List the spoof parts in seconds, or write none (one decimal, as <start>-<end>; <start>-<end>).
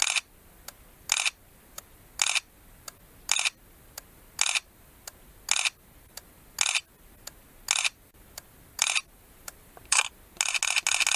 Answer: 8.8-10.0